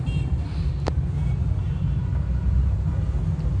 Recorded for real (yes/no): yes